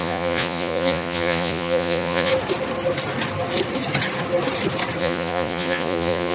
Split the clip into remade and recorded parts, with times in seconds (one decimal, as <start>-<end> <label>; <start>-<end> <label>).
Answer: 0.0-2.3 remade; 2.3-5.0 recorded; 5.0-6.3 remade

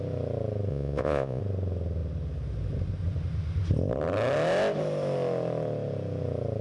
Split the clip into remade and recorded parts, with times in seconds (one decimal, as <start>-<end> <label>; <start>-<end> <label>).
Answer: 0.0-0.7 recorded; 0.7-1.4 remade; 1.4-6.6 recorded

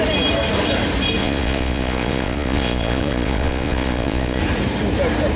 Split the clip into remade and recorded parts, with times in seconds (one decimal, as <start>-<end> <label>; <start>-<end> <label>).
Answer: 0.0-1.2 recorded; 1.2-4.4 remade; 4.4-5.4 recorded

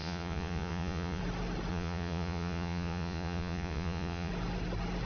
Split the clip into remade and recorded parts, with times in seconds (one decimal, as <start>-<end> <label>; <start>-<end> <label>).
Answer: 0.0-1.2 remade; 1.2-1.7 recorded; 1.7-4.3 remade; 4.3-5.1 recorded